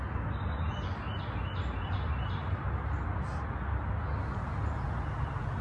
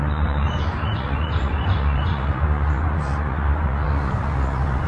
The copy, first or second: second